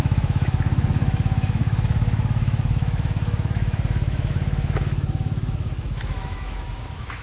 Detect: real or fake fake